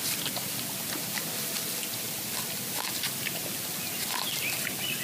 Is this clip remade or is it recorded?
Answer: recorded